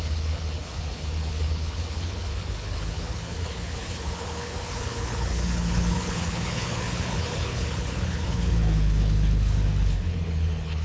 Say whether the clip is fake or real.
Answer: fake